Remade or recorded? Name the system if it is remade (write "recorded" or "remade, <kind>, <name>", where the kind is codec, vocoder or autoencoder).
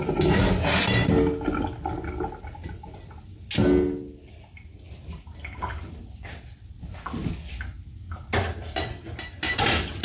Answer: recorded